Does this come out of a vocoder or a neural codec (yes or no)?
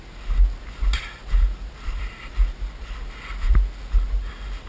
no